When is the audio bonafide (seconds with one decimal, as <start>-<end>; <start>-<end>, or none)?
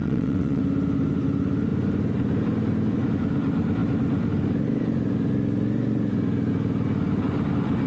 0.6-7.9